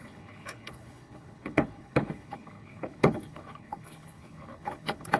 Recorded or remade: remade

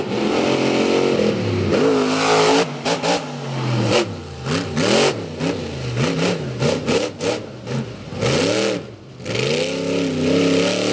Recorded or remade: recorded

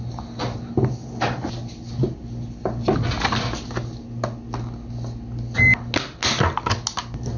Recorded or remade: recorded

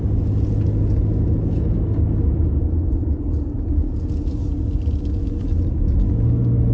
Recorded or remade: recorded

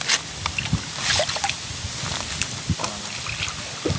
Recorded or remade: recorded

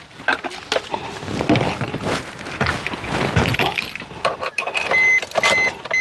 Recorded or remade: recorded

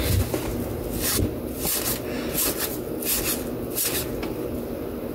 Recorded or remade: recorded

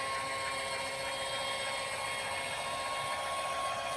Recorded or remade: recorded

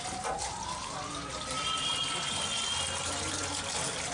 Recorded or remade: recorded